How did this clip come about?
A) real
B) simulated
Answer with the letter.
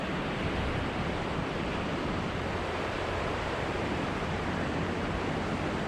B